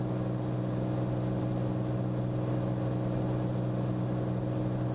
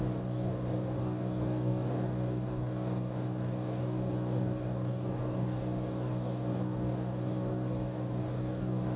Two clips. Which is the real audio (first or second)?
first